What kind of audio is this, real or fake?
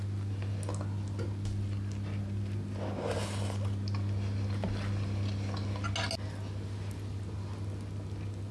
real